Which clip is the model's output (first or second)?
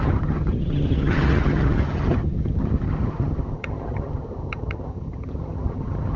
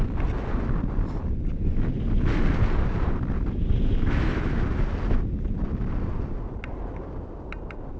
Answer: first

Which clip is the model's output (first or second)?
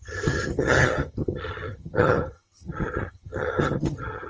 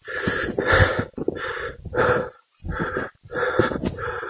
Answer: first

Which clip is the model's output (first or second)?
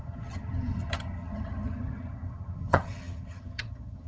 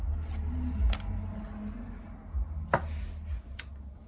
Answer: first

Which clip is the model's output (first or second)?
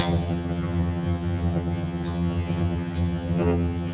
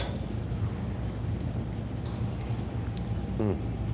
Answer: first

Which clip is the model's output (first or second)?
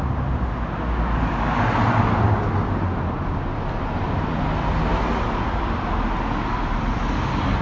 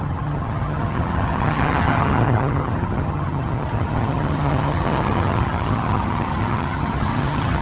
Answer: second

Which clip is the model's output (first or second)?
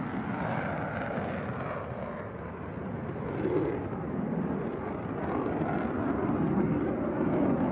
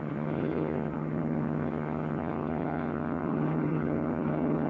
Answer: second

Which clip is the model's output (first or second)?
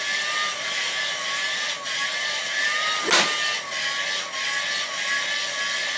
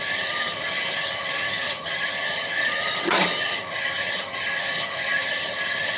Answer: second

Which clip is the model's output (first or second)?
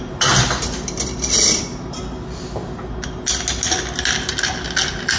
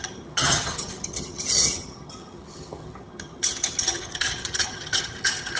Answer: second